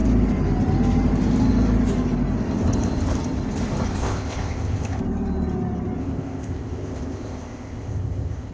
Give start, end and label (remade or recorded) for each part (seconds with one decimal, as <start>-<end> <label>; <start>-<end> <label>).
0.0-4.0 recorded; 4.0-5.0 remade; 5.0-6.0 recorded; 6.0-8.5 remade

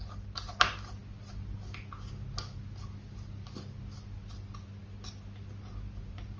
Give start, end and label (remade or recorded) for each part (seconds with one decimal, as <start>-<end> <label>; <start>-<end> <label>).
0.0-6.4 recorded

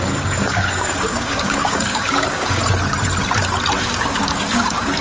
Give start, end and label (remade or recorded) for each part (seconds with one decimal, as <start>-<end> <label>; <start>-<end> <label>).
0.0-2.6 remade; 2.6-3.8 recorded; 3.8-5.0 remade

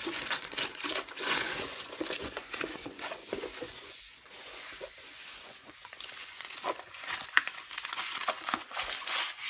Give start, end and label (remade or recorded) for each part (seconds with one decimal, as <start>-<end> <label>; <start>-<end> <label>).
0.0-9.5 remade

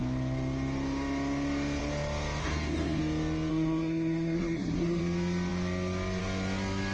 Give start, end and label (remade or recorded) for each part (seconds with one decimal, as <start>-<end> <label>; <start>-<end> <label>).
0.0-2.4 recorded; 2.4-3.0 remade; 3.0-3.5 recorded; 3.5-5.0 remade; 5.0-6.9 recorded

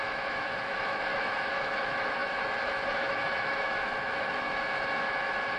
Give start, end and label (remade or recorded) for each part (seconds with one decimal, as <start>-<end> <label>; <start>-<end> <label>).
0.0-5.6 remade

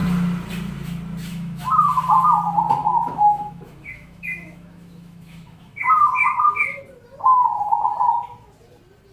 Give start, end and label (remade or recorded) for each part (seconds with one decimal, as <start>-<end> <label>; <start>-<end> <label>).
0.0-1.3 recorded; 1.3-2.0 remade; 2.0-2.8 recorded; 2.8-6.8 remade; 6.8-9.1 recorded